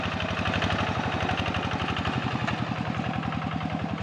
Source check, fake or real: real